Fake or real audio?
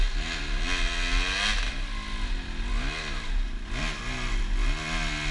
real